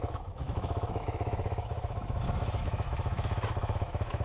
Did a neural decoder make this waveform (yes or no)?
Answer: yes